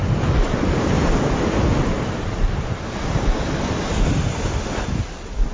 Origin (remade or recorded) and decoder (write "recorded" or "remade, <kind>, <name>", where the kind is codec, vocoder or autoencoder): recorded